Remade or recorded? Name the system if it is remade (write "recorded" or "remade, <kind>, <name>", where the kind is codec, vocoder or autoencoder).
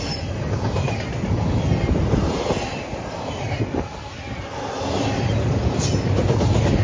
recorded